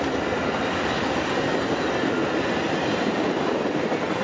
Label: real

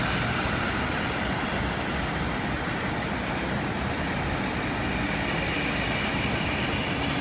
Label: real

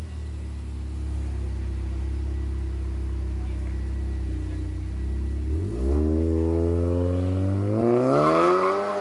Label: real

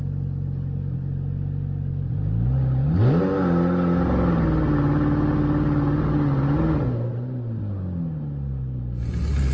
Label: real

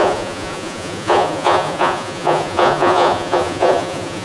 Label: fake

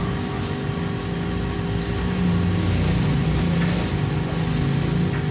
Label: real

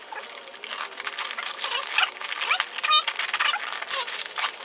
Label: real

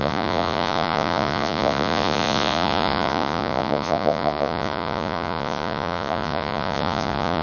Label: fake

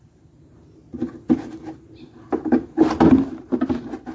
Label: real